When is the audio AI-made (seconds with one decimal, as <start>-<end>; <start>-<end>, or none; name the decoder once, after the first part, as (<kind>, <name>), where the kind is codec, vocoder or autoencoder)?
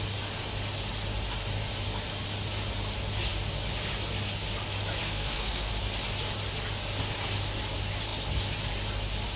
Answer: 5.0-5.7 (codec, SNAC)